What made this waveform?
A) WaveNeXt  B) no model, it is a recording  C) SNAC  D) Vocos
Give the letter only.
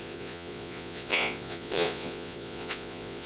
D